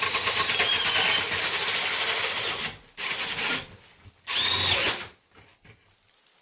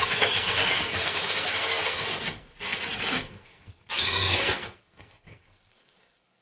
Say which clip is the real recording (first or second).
first